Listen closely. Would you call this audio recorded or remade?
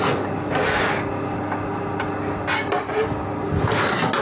recorded